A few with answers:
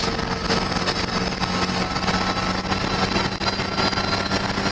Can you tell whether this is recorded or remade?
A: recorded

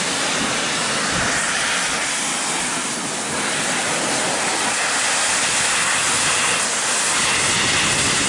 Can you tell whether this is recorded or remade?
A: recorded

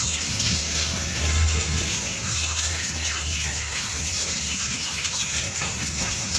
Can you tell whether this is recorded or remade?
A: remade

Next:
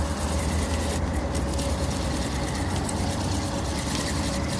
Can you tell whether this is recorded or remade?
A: recorded